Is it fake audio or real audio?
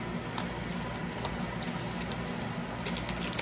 real